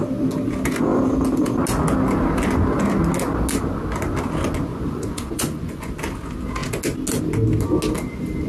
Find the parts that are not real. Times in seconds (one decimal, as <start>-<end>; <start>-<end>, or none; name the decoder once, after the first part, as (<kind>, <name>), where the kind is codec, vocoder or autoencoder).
4.7-5.9 (vocoder, Vocos)